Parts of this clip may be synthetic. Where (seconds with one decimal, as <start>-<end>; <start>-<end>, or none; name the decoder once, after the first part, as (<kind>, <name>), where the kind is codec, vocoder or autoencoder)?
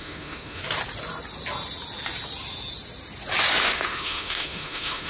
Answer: 0.0-0.6 (autoencoder, DAC-VAE); 3.6-5.1